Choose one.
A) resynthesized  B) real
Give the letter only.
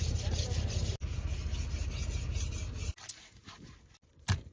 B